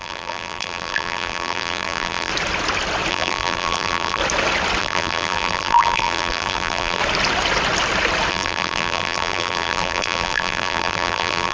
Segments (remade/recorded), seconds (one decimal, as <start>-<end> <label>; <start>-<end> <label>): 0.0-2.3 remade; 2.3-3.1 recorded; 3.1-4.2 remade; 4.2-4.8 recorded; 4.8-7.0 remade; 7.0-8.3 recorded; 8.3-11.5 remade